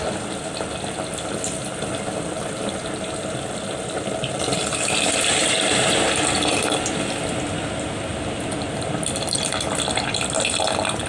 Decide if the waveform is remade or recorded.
recorded